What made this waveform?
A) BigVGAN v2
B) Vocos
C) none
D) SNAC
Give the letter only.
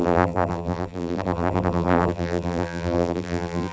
A